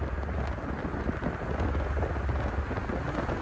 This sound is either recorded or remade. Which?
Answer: recorded